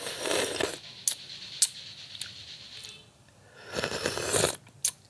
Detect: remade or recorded recorded